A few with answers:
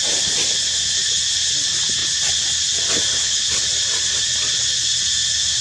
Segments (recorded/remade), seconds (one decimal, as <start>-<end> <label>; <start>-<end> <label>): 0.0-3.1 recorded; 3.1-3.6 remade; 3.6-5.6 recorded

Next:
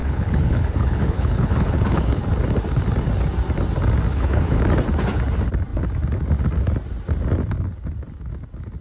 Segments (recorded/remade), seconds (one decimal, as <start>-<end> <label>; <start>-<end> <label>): 0.0-2.2 remade; 2.2-4.1 recorded; 4.1-4.6 remade; 4.6-8.8 recorded

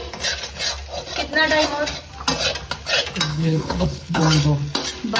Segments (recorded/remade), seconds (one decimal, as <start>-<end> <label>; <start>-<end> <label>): 0.0-3.3 recorded; 3.3-4.2 remade; 4.2-5.2 recorded

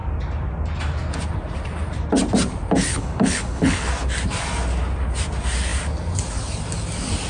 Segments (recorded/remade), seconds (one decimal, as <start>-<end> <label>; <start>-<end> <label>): 0.0-2.9 recorded; 2.9-3.9 remade; 3.9-7.3 recorded